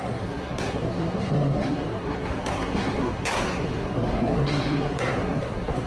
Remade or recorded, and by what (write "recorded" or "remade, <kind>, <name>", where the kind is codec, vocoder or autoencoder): remade, codec, SNAC